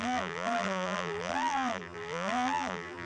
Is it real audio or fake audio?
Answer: fake